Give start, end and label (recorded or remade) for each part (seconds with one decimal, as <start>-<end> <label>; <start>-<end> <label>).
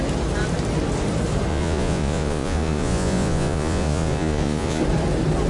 0.0-1.5 recorded; 1.5-4.8 remade; 4.8-5.5 recorded